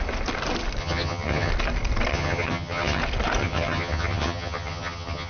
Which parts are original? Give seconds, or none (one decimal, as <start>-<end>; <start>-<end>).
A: 0.0-0.8; 1.5-2.1; 3.0-3.4